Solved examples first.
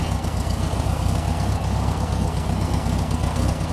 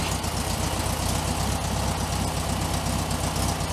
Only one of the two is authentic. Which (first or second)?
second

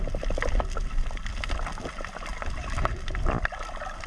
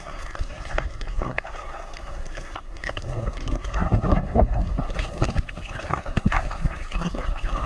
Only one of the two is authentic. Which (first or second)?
first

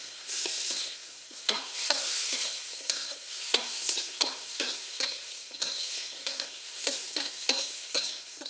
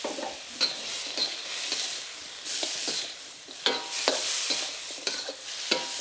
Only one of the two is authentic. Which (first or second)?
second